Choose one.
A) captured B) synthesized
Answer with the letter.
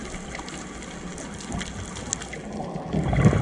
A